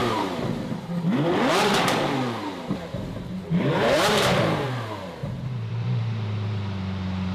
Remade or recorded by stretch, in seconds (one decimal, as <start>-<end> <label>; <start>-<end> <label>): 0.0-5.2 remade; 5.2-5.7 recorded; 5.7-7.3 remade